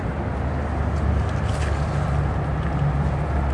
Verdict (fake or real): real